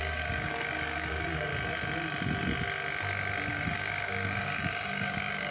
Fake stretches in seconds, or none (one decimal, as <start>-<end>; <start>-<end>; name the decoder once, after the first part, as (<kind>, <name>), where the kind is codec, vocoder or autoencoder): 0.0-1.5 (codec, DAC); 3.5-5.5